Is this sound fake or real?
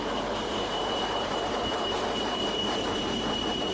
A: fake